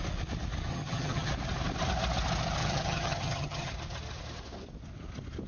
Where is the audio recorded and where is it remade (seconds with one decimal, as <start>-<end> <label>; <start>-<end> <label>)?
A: 0.0-0.7 recorded; 0.7-1.3 remade; 1.3-2.6 recorded; 2.6-3.7 remade; 3.7-5.5 recorded